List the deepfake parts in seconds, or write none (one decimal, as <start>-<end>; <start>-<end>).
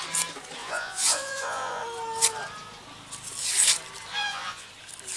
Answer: 0.6-1.8; 4.1-4.7